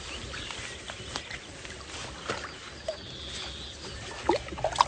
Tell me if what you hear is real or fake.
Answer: real